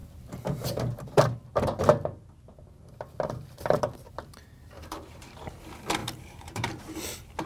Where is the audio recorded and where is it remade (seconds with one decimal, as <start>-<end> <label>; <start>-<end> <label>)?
0.0-4.4 recorded; 4.4-5.5 remade; 5.5-6.0 recorded; 6.0-6.8 remade; 6.8-7.5 recorded